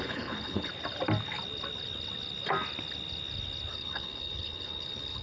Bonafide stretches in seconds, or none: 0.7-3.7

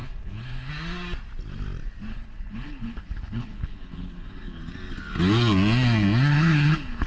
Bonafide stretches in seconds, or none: 0.7-2.1; 4.6-6.3